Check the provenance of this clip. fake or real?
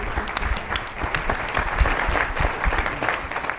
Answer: real